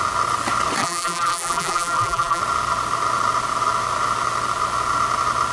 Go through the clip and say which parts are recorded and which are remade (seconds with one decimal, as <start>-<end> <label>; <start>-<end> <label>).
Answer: 0.0-0.8 recorded; 0.8-2.4 remade; 2.4-5.5 recorded